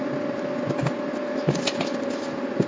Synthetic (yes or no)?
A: no